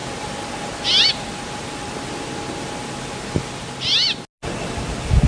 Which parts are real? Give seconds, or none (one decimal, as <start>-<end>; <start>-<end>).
0.0-5.3